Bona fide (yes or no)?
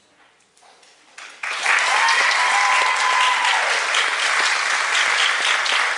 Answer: yes